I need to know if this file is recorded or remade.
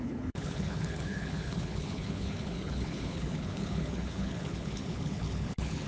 remade